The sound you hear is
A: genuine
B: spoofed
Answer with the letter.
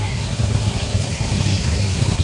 B